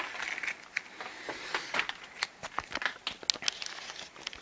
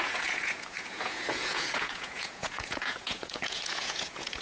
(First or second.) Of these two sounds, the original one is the first